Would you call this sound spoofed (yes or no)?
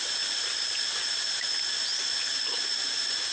no